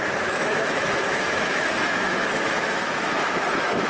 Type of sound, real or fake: fake